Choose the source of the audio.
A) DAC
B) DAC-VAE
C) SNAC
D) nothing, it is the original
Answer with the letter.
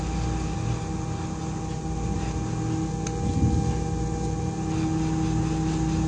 D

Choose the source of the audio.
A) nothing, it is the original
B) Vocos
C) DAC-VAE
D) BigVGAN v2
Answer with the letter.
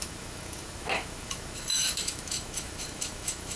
C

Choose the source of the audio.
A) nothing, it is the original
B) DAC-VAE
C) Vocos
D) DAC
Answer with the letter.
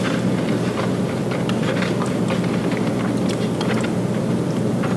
A